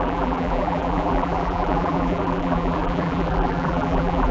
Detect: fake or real fake